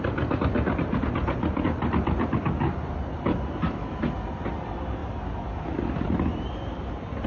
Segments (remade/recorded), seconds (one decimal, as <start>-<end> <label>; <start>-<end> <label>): 0.0-7.3 recorded